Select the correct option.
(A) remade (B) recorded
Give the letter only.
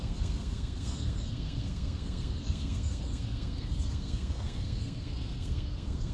A